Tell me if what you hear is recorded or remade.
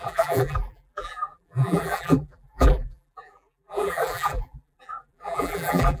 remade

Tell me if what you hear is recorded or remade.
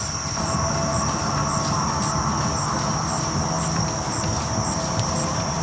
recorded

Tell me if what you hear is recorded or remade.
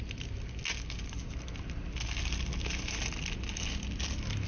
recorded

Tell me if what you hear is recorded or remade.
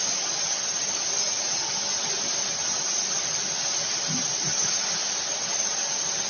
recorded